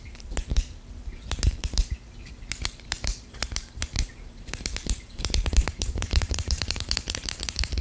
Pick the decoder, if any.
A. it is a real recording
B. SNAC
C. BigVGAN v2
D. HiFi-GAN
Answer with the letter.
C